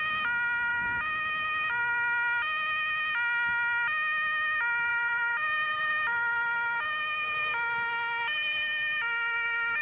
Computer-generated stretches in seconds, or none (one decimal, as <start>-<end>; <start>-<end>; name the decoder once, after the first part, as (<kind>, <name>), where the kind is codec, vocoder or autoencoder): 4.9-5.9 (vocoder, BigVGAN v2)